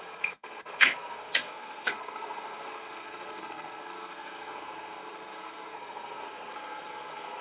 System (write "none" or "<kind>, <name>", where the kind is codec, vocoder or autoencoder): codec, SNAC